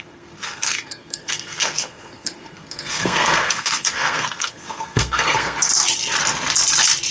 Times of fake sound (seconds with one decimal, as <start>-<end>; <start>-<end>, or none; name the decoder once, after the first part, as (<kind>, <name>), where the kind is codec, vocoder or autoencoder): 0.0-5.7 (codec, SNAC)